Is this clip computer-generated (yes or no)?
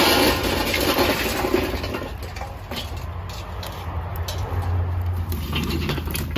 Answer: no